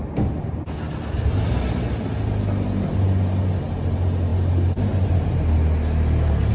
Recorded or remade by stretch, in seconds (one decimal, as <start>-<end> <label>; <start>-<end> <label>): 0.0-6.5 recorded